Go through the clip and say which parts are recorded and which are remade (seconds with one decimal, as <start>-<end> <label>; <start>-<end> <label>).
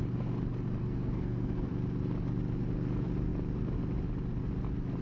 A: 0.0-0.8 recorded; 0.8-1.7 remade; 1.7-5.0 recorded